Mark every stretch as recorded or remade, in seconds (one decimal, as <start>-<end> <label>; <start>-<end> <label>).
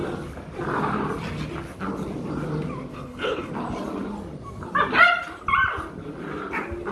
0.0-2.9 recorded; 2.9-3.5 remade; 3.5-6.9 recorded